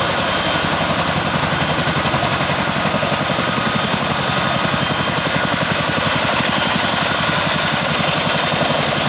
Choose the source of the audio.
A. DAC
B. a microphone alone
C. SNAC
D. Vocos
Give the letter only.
B